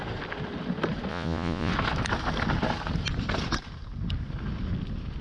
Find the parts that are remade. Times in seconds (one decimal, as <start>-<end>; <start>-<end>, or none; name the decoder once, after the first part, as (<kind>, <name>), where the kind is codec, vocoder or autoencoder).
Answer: 1.1-1.7 (vocoder, Vocos)